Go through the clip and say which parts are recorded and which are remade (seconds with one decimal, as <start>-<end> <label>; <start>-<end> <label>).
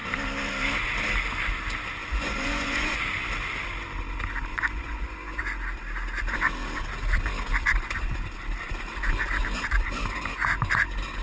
0.0-2.0 recorded; 2.0-3.0 remade; 3.0-4.5 recorded; 4.5-5.4 remade; 5.4-11.2 recorded